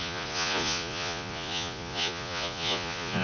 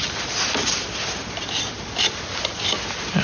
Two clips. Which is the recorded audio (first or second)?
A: second